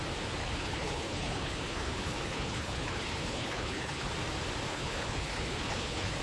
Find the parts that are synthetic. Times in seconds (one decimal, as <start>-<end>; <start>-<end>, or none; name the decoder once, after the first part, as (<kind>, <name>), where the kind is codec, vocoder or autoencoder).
0.4-4.1 (codec, HILCodec); 4.7-6.2